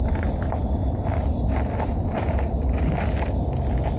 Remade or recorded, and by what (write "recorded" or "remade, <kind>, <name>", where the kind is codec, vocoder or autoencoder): recorded